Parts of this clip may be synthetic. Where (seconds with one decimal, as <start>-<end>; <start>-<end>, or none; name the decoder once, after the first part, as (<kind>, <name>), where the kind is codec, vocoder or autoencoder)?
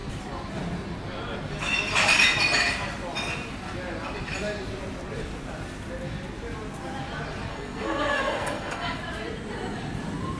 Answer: 7.5-9.0 (codec, SNAC)